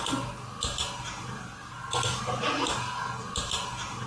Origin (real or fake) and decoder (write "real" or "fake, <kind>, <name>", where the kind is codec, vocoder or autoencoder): real